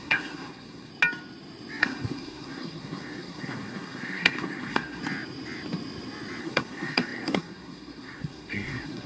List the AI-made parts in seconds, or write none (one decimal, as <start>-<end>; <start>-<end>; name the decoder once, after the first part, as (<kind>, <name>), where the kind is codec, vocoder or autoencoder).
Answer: 0.0-0.9 (codec, SNAC); 1.8-5.0; 6.4-9.1